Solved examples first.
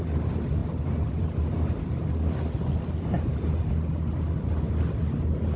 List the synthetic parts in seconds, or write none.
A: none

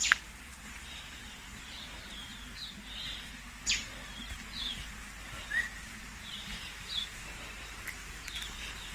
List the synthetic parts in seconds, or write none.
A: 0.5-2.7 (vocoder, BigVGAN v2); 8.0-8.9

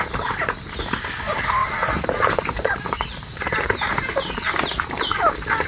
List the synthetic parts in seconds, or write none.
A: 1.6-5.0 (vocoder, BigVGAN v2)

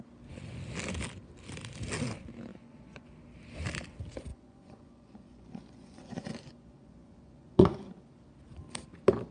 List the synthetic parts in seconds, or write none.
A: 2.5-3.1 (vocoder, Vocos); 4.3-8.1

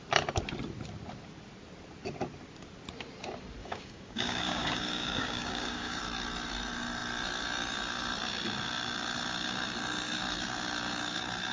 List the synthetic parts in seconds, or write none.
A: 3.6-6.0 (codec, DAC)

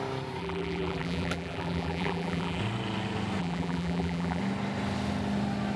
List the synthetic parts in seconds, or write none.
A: 0.4-2.6 (vocoder, BigVGAN v2); 3.4-4.4